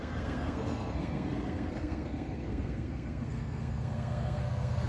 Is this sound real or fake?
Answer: fake